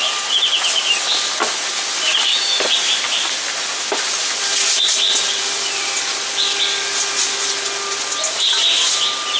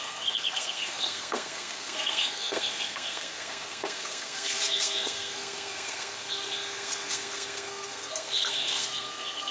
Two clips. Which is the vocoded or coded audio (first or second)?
second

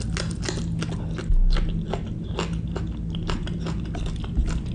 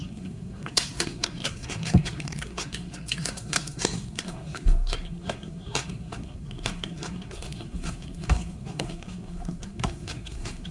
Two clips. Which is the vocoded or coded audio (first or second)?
second